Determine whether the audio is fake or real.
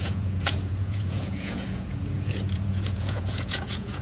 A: fake